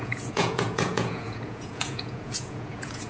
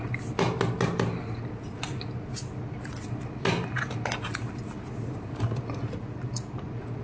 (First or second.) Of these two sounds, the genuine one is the second